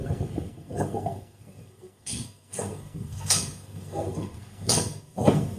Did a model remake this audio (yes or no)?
yes